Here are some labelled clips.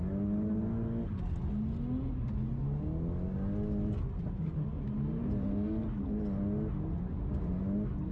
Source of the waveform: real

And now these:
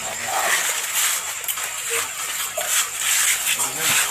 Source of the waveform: real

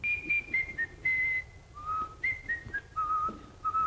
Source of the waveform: real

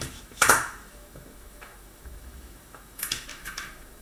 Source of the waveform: fake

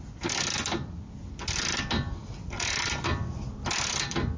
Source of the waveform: real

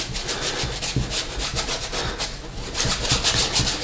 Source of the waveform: real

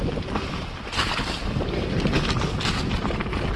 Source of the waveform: real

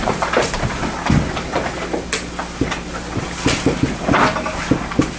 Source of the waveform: real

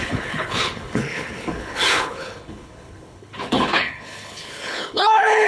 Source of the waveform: fake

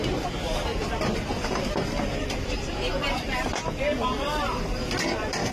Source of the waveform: fake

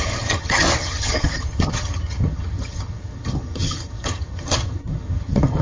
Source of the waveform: fake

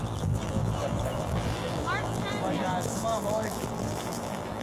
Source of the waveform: fake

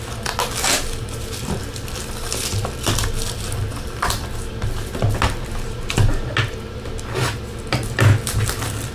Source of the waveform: real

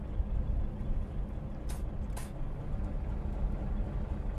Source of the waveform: real